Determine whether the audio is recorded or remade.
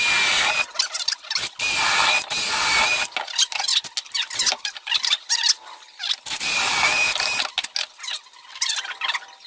recorded